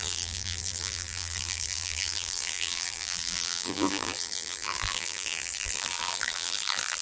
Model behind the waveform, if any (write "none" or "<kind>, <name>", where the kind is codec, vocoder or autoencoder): vocoder, BigVGAN v2